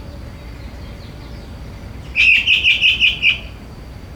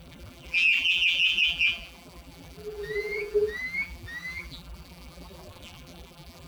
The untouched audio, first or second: first